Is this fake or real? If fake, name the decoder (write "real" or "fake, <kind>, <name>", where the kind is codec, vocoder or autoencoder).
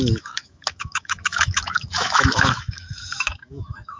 fake, autoencoder, DAC-VAE